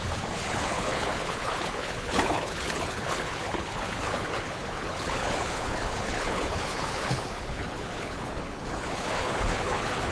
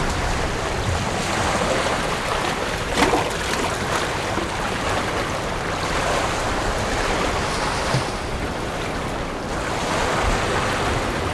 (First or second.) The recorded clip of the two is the second